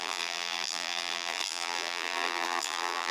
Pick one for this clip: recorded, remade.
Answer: remade